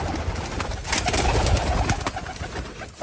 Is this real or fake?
real